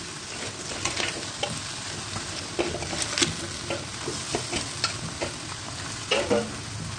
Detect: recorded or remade recorded